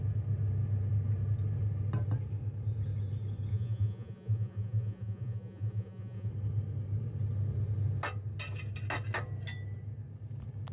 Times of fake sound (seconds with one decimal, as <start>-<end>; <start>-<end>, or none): 3.5-6.3